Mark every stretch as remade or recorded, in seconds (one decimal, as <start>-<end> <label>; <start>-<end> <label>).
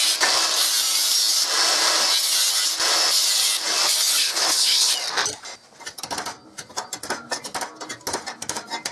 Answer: 0.0-4.2 recorded; 4.2-4.9 remade; 4.9-8.9 recorded